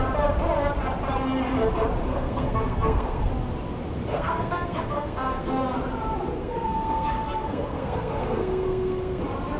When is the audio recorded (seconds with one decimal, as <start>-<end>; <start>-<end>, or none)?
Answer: 0.0-2.0; 3.3-4.1; 5.5-6.4; 9.2-9.6